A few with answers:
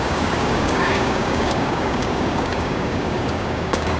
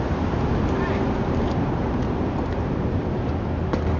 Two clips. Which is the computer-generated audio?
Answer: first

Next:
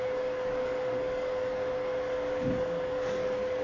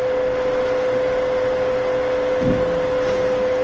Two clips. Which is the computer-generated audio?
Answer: first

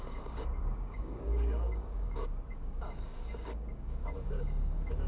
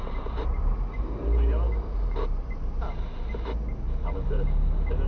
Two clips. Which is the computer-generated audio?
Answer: first